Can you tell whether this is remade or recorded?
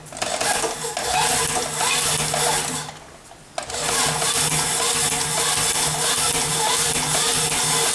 recorded